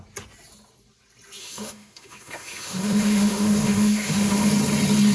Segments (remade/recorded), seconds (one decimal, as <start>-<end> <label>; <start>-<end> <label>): 0.0-1.4 recorded; 1.4-4.5 remade; 4.5-5.1 recorded